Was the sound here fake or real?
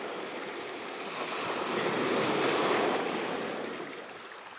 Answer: real